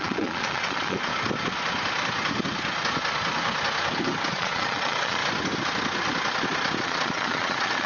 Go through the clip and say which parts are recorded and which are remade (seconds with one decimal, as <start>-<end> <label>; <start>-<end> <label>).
0.0-1.1 remade; 1.1-4.3 recorded; 4.3-5.2 remade; 5.2-6.8 recorded; 6.8-7.9 remade